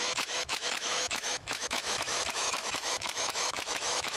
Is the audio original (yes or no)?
no